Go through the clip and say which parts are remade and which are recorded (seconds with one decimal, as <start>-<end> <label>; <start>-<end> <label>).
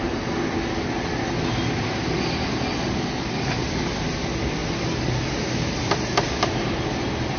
0.0-7.4 recorded